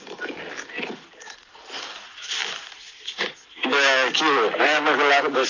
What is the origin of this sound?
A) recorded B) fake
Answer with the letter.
A